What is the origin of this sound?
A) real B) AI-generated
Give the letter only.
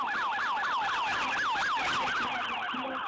A